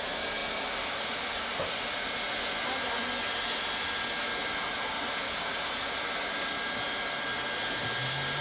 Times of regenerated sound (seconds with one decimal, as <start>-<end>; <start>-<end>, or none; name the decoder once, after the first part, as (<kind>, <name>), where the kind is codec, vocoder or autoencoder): none